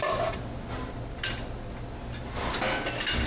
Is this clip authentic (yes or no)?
yes